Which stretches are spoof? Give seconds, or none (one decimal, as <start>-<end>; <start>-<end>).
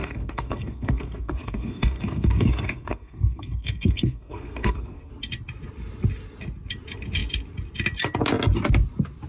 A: 0.0-5.1